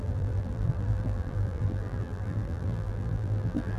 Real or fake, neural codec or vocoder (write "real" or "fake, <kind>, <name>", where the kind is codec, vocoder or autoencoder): fake, vocoder, BigVGAN v2